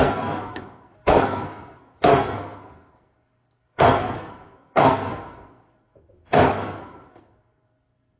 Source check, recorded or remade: remade